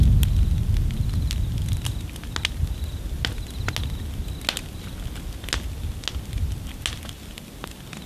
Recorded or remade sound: recorded